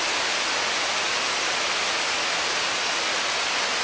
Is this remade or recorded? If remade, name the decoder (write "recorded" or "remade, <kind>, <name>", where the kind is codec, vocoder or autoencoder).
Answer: recorded